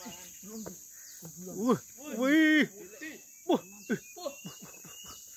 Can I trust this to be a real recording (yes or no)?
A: yes